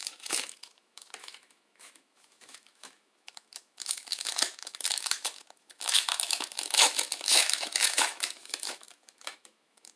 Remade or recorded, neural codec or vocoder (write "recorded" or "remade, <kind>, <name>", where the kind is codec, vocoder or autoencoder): remade, autoencoder, DAC-VAE